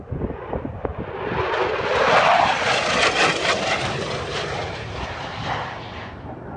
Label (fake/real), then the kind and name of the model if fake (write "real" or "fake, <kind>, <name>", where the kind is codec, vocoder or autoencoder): real